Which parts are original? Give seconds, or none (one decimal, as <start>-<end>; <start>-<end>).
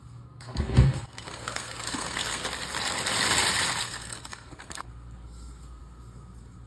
2.4-3.8